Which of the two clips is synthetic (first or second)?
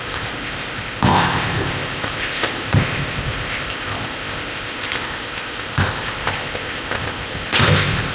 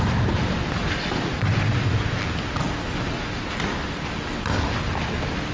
first